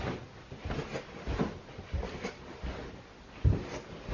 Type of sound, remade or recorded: recorded